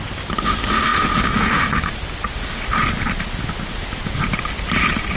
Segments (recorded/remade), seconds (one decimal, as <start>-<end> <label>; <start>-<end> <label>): 0.0-5.2 recorded